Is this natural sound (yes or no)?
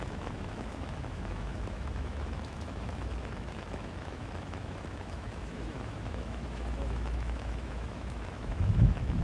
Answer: no